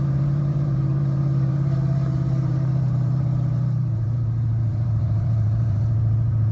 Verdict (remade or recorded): remade